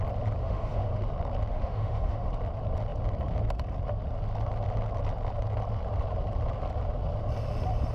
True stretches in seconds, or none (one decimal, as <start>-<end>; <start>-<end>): 0.0-0.4; 1.0-1.5; 2.3-7.9

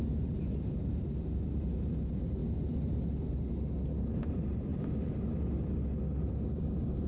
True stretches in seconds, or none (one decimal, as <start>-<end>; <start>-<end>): 2.4-4.0; 4.7-6.2

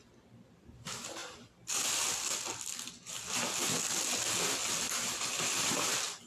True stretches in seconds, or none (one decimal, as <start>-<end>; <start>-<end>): 0.0-6.3

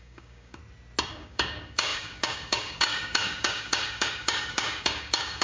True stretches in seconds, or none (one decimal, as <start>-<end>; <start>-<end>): 0.6-1.1